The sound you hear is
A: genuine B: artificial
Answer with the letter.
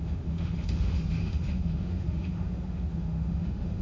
B